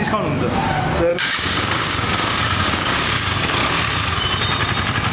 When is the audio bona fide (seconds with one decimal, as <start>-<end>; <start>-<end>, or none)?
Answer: 0.0-1.1; 3.4-5.1

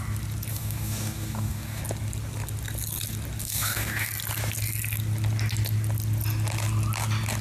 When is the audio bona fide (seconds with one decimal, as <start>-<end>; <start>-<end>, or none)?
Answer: 0.0-0.5; 1.8-3.4; 4.1-7.4

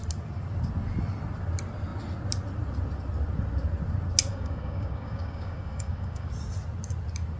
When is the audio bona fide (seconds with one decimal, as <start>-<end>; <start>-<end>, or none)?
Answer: 0.0-4.3; 6.3-7.4

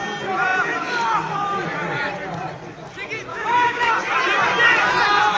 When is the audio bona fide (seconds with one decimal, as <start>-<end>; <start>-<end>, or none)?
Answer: 0.0-3.3; 3.9-5.4